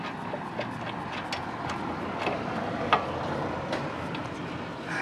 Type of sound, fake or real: real